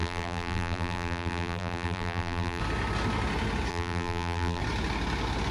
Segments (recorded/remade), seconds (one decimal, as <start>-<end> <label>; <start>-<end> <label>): 0.0-2.6 remade; 2.6-3.7 recorded; 3.7-4.6 remade; 4.6-5.5 recorded